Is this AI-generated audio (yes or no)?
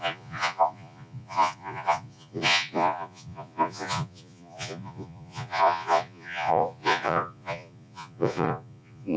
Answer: yes